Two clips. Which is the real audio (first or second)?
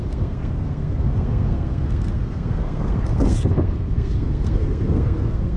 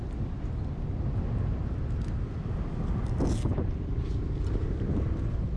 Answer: second